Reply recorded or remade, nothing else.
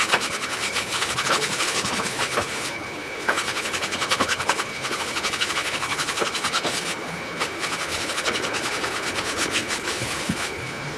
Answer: remade